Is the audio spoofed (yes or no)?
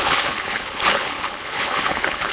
yes